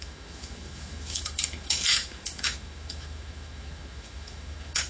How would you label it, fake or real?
fake